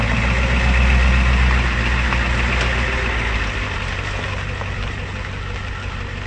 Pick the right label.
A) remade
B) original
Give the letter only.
B